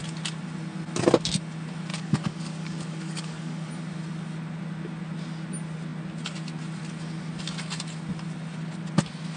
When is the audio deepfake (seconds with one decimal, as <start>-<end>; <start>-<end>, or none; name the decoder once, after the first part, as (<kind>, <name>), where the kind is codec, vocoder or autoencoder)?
1.9-3.7 (codec, DAC)